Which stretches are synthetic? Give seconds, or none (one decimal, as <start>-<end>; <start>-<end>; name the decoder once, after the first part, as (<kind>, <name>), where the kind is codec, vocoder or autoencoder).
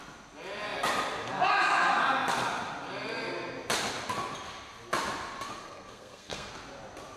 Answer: 5.6-6.5 (codec, SNAC)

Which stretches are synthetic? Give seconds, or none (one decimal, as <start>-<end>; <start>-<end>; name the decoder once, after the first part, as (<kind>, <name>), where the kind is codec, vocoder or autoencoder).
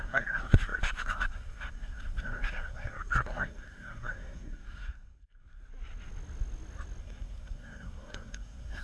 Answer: 0.0-5.6 (codec, SNAC); 7.0-8.8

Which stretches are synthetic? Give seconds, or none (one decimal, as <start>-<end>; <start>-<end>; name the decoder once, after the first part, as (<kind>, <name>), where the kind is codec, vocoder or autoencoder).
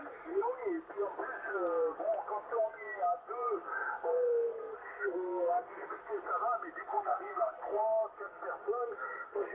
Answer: 0.0-0.6 (codec, SNAC); 4.1-6.0; 6.8-7.8; 8.9-9.5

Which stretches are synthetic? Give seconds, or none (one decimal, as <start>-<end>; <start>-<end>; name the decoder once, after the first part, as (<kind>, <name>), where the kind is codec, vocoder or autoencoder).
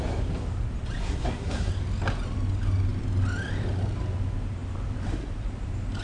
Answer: 1.0-1.7 (codec, SNAC)